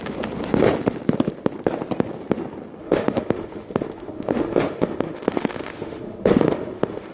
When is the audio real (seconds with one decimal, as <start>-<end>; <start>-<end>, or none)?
0.0-2.8